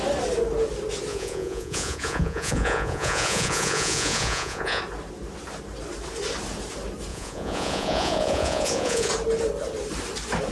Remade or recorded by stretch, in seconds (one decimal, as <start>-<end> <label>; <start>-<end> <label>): 0.0-1.1 recorded; 1.1-4.8 remade; 4.8-7.1 recorded; 7.1-9.1 remade; 9.1-10.5 recorded